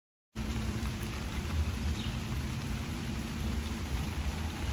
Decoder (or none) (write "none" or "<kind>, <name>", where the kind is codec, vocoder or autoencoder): vocoder, BigVGAN v2